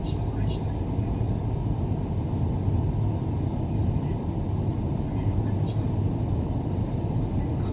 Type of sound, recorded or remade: recorded